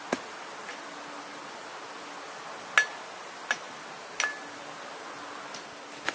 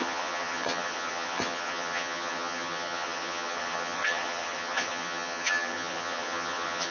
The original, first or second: first